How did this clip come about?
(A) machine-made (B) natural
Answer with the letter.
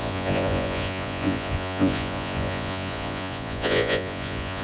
A